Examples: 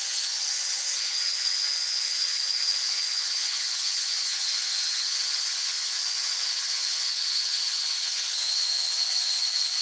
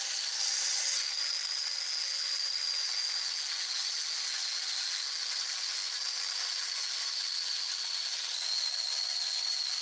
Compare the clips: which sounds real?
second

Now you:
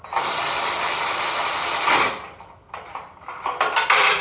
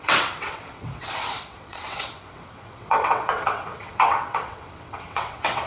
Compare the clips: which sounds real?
first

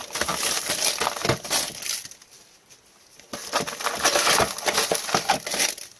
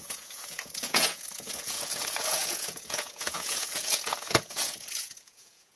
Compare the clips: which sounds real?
first